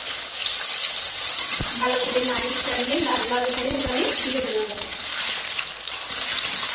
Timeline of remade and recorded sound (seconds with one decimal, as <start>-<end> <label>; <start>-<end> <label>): 0.0-0.4 remade; 0.4-1.0 recorded; 1.0-5.1 remade; 5.1-6.7 recorded